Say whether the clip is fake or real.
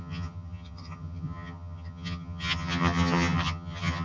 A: fake